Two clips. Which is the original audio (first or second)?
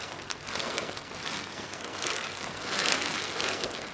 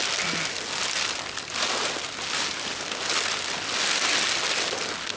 second